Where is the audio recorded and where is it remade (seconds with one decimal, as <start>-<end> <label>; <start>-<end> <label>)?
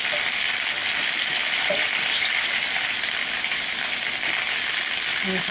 0.0-0.8 recorded; 0.8-4.1 remade; 4.1-5.5 recorded